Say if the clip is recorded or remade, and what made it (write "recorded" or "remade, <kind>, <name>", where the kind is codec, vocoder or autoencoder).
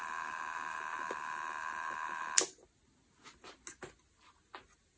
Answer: recorded